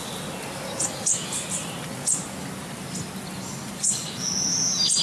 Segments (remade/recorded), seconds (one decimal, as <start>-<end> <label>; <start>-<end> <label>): 0.0-5.0 recorded